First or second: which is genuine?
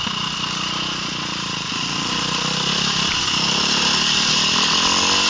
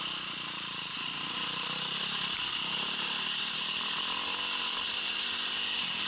first